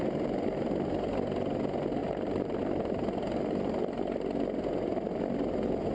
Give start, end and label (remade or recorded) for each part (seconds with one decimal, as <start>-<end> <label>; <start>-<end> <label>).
0.0-2.0 recorded; 2.0-2.6 remade; 2.6-5.9 recorded